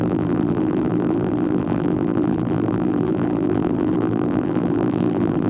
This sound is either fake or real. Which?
fake